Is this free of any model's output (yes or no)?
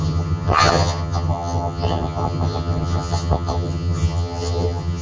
no